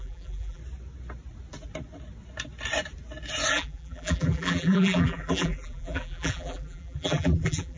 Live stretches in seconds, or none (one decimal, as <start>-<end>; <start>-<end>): 0.6-3.5